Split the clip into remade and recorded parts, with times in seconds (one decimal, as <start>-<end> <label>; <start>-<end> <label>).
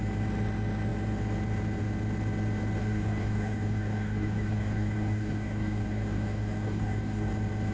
0.0-2.8 recorded; 2.8-7.3 remade; 7.3-7.7 recorded